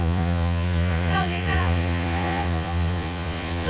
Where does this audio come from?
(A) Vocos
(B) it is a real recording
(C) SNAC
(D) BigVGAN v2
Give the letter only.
A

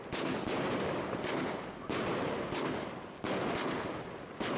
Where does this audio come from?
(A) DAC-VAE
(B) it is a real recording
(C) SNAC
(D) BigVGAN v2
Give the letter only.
B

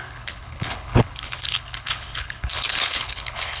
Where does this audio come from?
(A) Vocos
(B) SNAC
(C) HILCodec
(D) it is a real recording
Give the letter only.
C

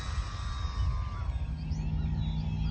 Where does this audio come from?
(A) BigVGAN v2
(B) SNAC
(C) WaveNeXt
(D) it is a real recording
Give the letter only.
D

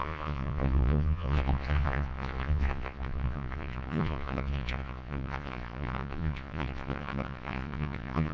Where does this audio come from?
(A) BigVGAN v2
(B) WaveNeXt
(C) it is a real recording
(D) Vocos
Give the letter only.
D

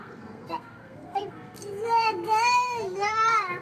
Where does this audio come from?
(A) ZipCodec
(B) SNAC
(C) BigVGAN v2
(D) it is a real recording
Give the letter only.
B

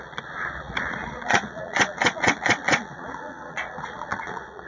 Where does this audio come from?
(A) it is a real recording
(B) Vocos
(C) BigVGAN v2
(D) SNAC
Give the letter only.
B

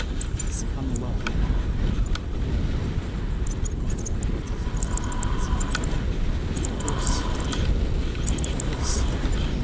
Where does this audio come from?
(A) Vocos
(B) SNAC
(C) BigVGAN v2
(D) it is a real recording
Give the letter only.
D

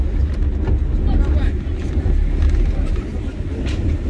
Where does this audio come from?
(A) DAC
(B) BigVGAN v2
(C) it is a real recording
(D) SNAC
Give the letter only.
C